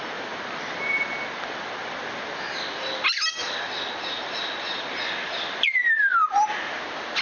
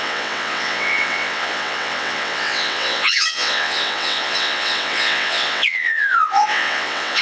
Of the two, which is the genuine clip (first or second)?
first